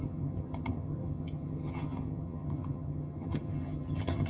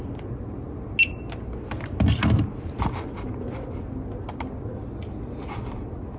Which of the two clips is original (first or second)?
second